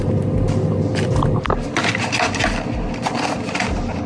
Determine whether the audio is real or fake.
real